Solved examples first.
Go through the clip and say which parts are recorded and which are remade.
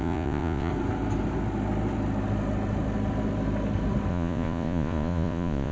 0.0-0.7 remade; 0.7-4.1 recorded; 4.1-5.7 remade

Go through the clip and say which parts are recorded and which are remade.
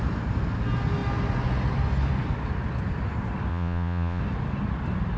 0.0-3.5 recorded; 3.5-4.2 remade; 4.2-5.2 recorded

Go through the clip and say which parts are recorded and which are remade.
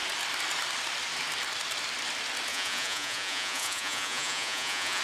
0.0-2.5 recorded; 2.5-5.0 remade